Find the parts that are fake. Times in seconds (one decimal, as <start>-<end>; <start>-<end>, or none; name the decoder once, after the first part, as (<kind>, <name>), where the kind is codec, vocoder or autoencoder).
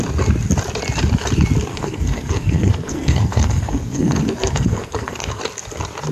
1.7-5.4 (codec, SNAC)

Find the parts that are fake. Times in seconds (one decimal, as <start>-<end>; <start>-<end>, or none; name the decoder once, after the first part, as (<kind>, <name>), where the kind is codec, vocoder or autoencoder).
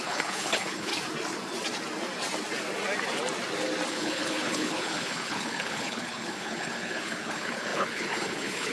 0.0-0.9 (codec, HILCodec); 3.9-8.7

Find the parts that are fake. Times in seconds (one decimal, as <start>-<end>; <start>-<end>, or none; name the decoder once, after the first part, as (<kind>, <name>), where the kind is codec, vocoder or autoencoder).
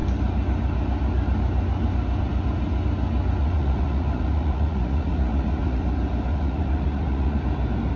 3.4-5.8 (vocoder, Vocos); 6.3-7.4